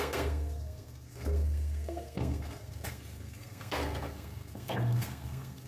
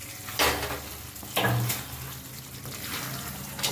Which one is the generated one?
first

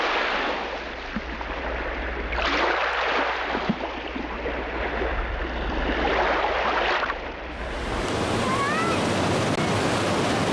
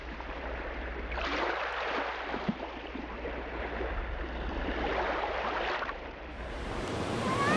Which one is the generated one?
second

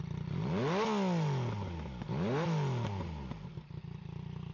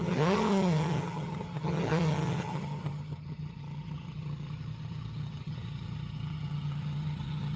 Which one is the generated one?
second